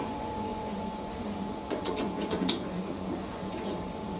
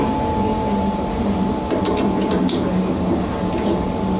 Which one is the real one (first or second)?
second